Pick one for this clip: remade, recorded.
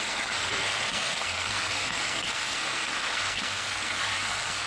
remade